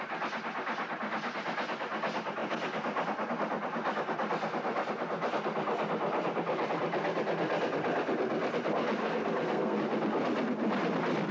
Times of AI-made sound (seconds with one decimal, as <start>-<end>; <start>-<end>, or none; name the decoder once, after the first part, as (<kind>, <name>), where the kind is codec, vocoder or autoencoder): 9.0-9.8 (codec, SNAC)